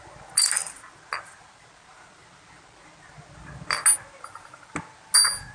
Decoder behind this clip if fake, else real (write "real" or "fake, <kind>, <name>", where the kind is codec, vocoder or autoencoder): real